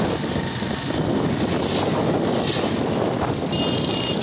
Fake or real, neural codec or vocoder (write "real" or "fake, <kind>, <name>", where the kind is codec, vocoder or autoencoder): real